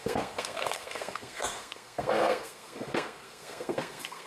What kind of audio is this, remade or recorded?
remade